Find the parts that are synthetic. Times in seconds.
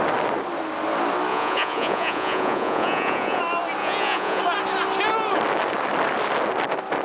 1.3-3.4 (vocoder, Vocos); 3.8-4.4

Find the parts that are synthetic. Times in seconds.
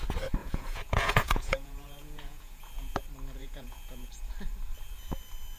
0.4-3.0 (vocoder, Vocos); 3.4-4.3